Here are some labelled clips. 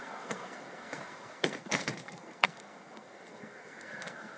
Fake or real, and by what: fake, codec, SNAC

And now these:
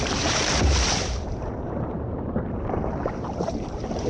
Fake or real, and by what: fake, vocoder, BigVGAN v2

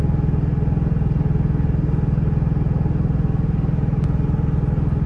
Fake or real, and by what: real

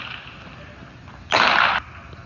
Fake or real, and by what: real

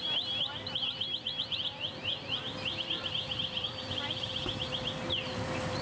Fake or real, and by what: fake, vocoder, BigVGAN v2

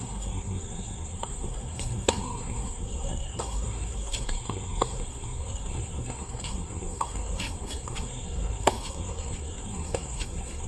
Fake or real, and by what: fake, codec, SNAC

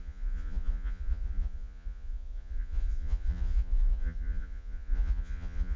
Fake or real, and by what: fake, vocoder, Vocos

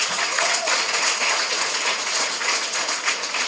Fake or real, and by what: fake, vocoder, Vocos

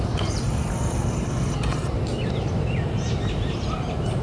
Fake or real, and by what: fake, vocoder, BigVGAN v2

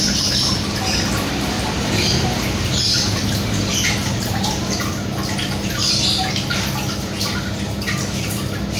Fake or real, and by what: real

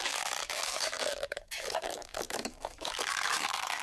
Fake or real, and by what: fake, codec, DAC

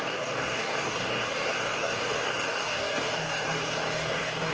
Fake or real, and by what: fake, codec, DAC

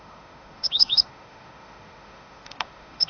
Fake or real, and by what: fake, autoencoder, DAC-VAE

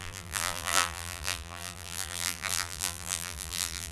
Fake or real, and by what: fake, vocoder, BigVGAN v2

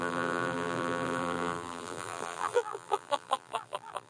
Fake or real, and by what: fake, vocoder, BigVGAN v2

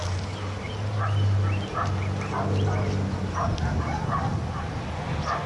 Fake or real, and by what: real